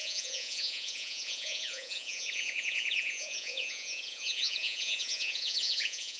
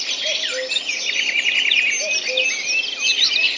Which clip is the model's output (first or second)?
first